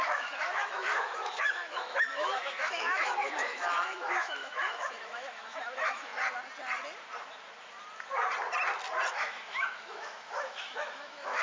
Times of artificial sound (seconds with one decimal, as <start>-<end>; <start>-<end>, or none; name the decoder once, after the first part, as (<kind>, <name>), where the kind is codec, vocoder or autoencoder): 0.0-6.1 (autoencoder, DAC-VAE); 9.1-11.4